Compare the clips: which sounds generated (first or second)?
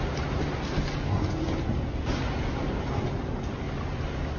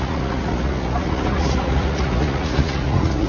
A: second